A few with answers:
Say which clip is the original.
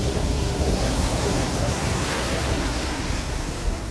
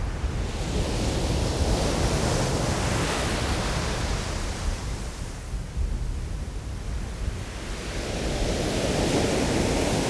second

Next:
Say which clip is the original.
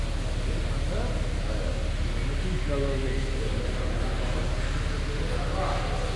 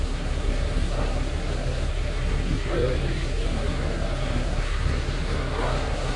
first